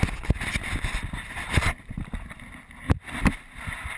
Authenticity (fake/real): real